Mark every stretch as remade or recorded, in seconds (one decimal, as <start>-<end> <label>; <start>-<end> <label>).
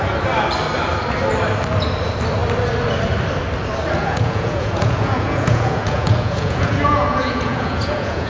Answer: 0.0-4.0 recorded; 4.0-8.3 remade